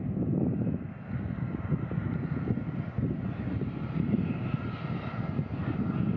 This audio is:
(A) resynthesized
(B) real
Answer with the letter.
B